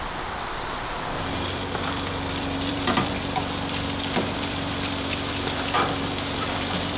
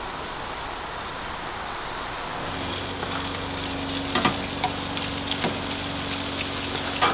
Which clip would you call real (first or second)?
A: second